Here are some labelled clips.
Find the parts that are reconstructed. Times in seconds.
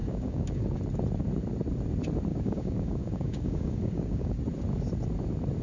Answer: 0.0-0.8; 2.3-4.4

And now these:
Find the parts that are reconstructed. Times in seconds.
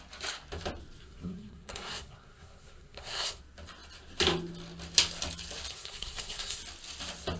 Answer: 1.0-3.4; 5.7-6.6